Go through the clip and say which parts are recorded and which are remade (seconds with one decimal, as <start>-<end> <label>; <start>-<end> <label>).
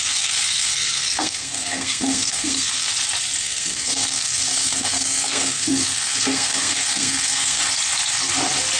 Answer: 0.0-2.9 remade; 2.9-3.4 recorded; 3.4-7.6 remade; 7.6-8.8 recorded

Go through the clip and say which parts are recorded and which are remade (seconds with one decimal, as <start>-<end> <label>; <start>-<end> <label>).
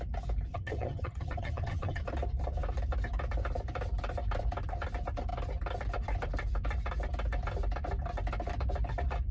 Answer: 0.0-0.5 recorded; 0.5-2.0 remade; 2.0-9.3 recorded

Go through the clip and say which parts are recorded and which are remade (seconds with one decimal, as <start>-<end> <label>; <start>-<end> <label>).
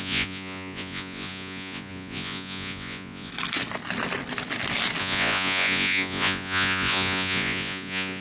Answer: 0.0-3.3 remade; 3.3-5.0 recorded; 5.0-8.2 remade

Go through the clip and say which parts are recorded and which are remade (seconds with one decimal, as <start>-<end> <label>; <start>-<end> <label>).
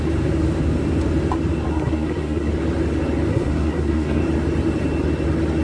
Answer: 0.0-1.7 recorded; 1.7-2.5 remade; 2.5-3.3 recorded; 3.3-4.2 remade; 4.2-5.6 recorded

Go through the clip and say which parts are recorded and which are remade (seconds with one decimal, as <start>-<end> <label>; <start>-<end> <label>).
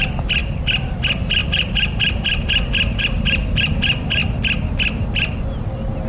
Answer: 0.0-4.2 remade; 4.2-6.1 recorded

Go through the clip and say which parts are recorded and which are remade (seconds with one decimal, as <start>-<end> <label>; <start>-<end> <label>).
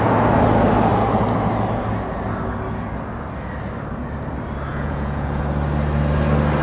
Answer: 0.0-4.7 recorded; 4.7-5.4 remade; 5.4-6.6 recorded